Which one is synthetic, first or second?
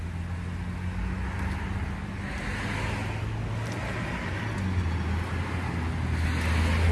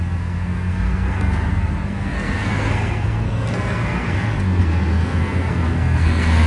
second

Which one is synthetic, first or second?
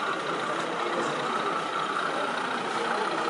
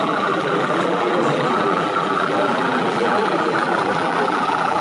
second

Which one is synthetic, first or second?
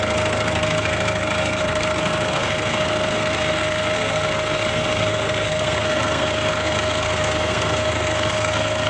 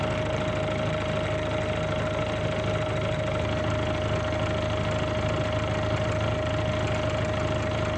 first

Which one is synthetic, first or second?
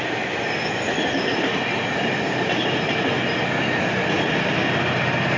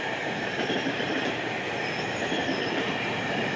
second